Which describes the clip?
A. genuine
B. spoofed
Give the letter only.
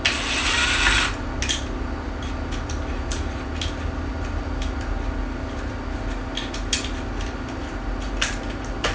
A